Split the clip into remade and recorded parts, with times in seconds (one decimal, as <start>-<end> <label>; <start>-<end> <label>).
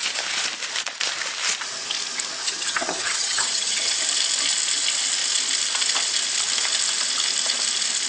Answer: 0.0-2.4 recorded; 2.4-4.0 remade; 4.0-8.1 recorded